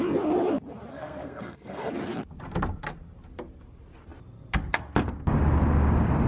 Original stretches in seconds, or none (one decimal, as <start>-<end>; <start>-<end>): 0.0-0.9; 1.9-6.3